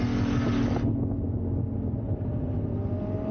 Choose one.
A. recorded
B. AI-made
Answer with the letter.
A